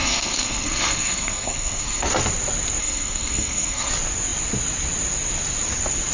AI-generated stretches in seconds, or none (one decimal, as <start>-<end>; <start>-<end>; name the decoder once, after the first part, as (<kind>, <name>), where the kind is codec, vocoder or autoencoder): 0.0-2.1 (codec, SNAC); 2.8-3.9